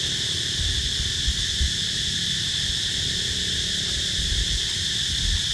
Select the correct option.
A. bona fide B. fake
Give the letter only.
B